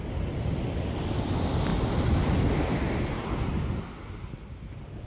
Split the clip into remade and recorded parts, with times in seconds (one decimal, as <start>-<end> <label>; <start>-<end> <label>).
0.0-1.7 recorded; 1.7-2.7 remade; 2.7-5.1 recorded